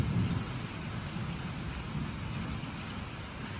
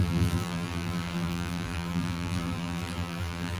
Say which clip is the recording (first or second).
first